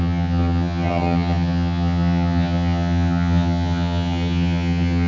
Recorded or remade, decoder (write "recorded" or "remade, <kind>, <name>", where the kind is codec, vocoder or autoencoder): remade, vocoder, HiFi-GAN